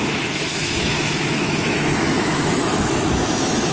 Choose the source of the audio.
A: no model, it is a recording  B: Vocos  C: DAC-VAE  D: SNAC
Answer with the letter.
C